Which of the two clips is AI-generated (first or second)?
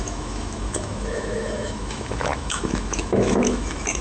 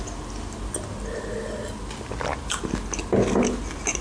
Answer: first